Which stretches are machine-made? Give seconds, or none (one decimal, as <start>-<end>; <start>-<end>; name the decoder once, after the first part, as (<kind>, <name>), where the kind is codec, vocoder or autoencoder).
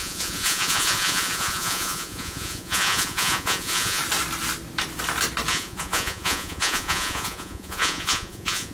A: 0.0-4.0 (vocoder, Vocos); 5.5-8.7